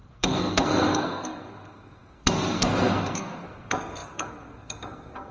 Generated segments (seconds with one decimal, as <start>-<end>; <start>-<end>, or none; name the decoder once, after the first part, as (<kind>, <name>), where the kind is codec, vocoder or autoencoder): 0.0-5.3 (codec, SNAC)

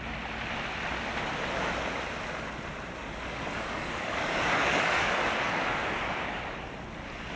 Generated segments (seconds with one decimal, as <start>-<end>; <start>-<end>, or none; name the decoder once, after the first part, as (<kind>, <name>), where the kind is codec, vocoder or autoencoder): 3.0-6.6 (codec, DAC)

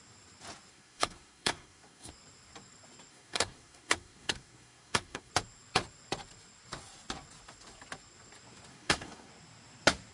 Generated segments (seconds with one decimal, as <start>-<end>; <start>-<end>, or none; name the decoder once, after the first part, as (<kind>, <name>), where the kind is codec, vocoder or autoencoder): 0.7-2.1 (codec, SNAC); 3.1-5.3; 8.7-9.3

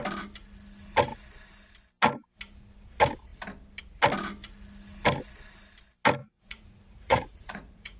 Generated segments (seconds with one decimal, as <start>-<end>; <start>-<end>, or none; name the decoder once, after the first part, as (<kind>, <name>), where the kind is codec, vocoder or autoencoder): 6.2-8.0 (vocoder, Vocos)